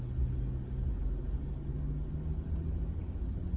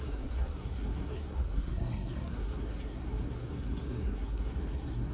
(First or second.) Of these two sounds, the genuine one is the first